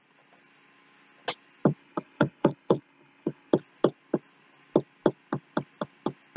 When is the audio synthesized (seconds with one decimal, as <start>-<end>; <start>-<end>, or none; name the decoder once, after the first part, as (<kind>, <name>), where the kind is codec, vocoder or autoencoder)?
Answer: 1.8-3.5 (codec, HILCodec)

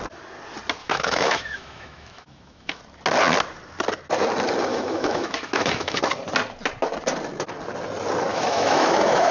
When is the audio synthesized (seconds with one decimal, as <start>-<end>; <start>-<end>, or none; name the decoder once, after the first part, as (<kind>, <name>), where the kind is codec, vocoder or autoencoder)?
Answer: 0.8-2.8 (autoencoder, DAC-VAE); 4.7-6.0; 8.3-9.3

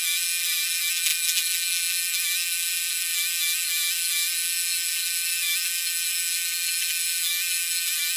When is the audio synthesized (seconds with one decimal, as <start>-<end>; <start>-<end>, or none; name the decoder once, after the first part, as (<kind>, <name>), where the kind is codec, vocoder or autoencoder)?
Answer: 0.0-8.2 (vocoder, BigVGAN v2)

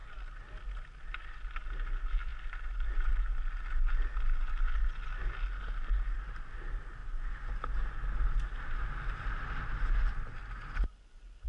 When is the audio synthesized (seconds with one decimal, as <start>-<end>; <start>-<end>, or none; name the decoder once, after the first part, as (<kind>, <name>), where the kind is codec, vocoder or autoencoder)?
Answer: 7.0-7.5 (vocoder, Vocos)

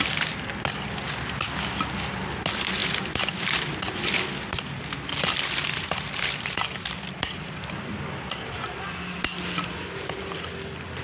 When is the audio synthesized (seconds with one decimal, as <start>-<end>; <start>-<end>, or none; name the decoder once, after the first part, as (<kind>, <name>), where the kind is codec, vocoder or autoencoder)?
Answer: none